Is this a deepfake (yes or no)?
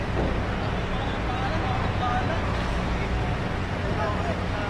no